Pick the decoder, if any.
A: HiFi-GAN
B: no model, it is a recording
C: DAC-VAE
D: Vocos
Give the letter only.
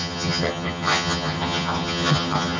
A